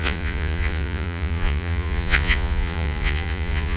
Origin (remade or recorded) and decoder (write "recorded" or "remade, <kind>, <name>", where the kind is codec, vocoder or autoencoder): remade, vocoder, Vocos